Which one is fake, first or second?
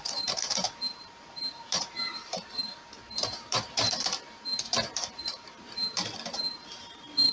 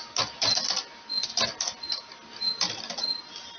first